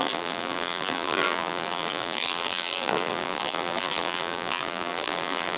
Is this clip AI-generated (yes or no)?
yes